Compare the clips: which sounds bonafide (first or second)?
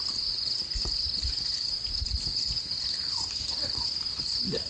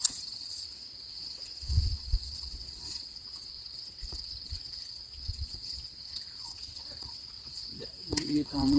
first